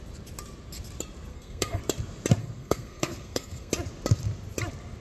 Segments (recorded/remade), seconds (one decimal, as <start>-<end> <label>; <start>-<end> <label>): 0.0-1.3 recorded; 1.3-1.8 remade; 1.8-2.4 recorded; 2.4-3.7 remade; 3.7-5.0 recorded